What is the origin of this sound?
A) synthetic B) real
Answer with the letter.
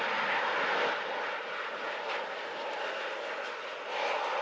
B